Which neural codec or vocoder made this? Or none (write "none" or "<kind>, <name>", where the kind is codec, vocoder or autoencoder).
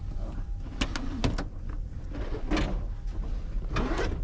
none